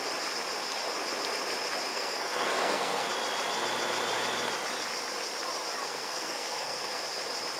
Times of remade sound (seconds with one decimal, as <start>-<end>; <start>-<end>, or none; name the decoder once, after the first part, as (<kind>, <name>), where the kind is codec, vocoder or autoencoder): 1.9-3.1 (codec, SNAC); 5.8-7.0